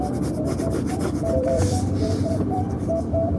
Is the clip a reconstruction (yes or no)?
yes